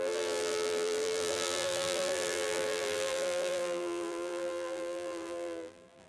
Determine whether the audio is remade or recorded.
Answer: remade